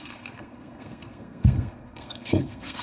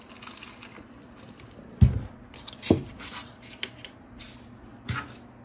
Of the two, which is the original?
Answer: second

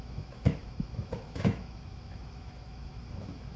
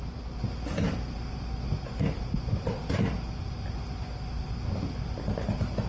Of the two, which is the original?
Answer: second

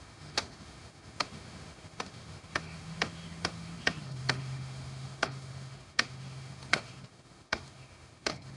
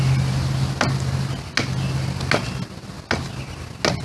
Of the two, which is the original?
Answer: second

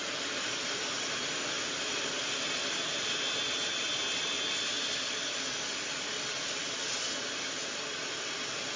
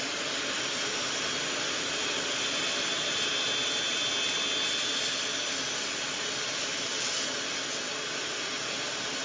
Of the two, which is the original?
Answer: second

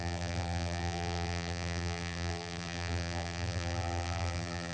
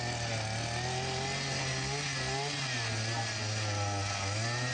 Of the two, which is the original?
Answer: second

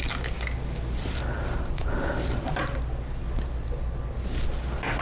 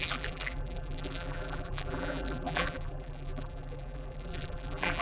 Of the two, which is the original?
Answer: first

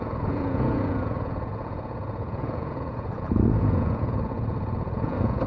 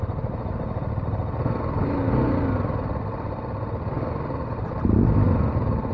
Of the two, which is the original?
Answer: second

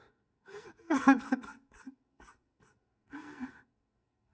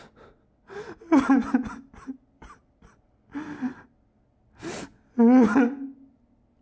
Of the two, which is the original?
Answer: second